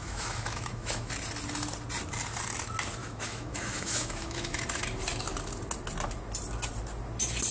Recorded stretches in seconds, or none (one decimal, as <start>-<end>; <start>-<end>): 1.1-3.0; 4.6-7.5